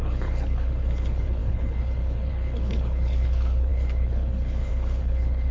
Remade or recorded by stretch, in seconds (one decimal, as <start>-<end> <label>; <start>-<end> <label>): 0.0-5.5 remade